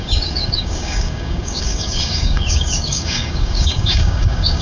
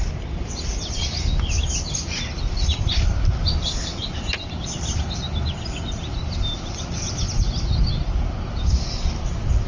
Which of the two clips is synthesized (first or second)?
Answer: first